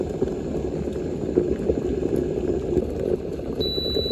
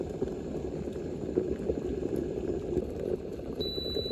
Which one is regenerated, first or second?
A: second